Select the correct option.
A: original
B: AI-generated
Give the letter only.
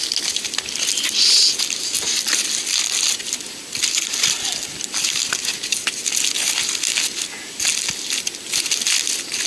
A